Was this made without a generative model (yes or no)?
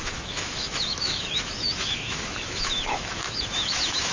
no